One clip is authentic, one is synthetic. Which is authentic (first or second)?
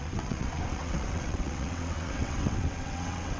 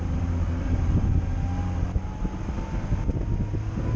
second